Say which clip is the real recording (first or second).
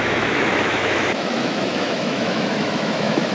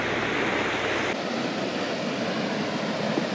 second